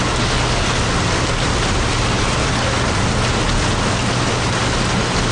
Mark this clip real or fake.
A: real